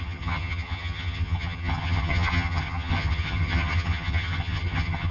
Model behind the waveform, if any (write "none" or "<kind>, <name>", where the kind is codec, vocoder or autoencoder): vocoder, HiFi-GAN